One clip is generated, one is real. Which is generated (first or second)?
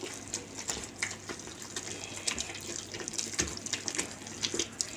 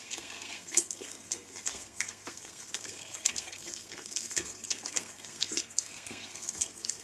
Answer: second